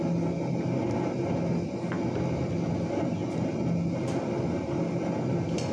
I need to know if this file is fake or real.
real